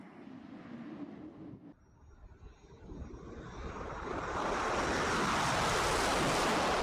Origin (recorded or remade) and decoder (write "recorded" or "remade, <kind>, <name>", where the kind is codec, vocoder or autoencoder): recorded